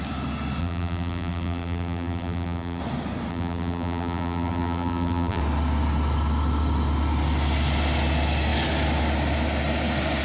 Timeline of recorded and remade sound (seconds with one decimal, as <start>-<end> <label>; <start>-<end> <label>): 0.0-0.6 recorded; 0.6-2.8 remade; 2.8-3.3 recorded; 3.3-5.4 remade; 5.4-10.2 recorded